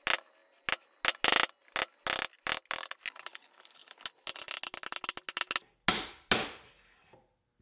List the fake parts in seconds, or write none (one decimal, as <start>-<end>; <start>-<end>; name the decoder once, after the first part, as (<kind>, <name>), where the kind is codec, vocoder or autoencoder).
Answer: none